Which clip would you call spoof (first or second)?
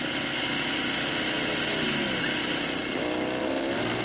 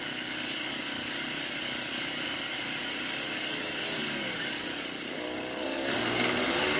second